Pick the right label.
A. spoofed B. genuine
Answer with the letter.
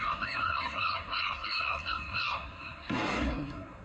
A